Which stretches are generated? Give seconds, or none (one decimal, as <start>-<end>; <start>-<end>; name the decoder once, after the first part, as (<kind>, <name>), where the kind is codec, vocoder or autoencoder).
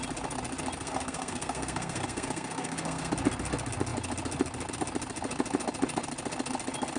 0.8-3.1 (codec, SNAC)